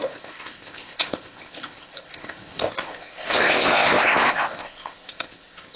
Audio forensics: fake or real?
fake